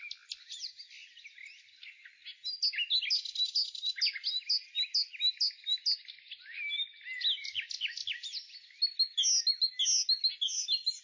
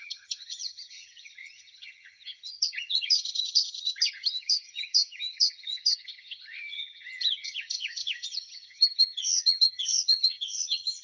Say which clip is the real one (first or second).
first